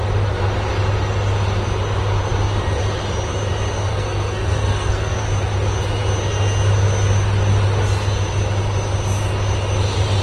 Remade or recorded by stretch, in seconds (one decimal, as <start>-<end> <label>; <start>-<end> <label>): 0.0-3.9 recorded; 3.9-5.2 remade; 5.2-10.2 recorded